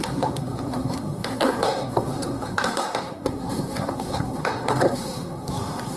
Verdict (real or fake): fake